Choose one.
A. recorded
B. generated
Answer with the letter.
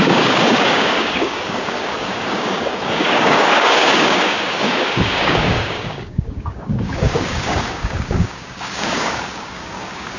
B